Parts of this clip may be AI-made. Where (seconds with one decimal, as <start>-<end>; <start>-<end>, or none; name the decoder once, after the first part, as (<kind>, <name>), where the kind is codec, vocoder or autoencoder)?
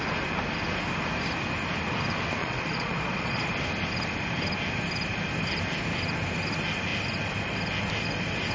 2.4-3.5 (vocoder, Vocos)